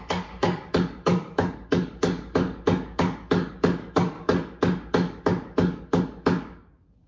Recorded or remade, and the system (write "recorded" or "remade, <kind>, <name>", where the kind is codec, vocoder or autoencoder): remade, codec, DAC